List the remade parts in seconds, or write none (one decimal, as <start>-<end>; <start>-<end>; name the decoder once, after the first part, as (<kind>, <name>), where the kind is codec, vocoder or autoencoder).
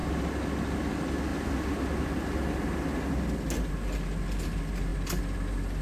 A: none